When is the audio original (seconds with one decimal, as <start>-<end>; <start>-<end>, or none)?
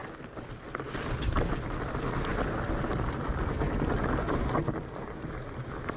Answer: 0.0-6.0